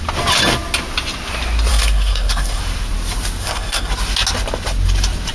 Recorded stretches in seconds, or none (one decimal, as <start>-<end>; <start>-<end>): 0.0-1.7; 2.6-3.4; 3.9-5.3